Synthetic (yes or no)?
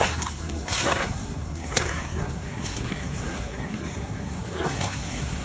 yes